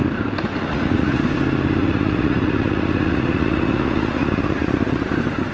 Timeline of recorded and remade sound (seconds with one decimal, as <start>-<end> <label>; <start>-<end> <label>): 0.0-0.5 recorded; 0.5-1.2 remade; 1.2-1.8 recorded; 1.8-5.1 remade; 5.1-5.5 recorded